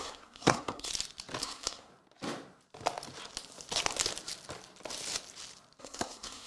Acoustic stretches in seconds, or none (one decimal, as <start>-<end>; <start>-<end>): 0.9-1.4; 1.9-5.8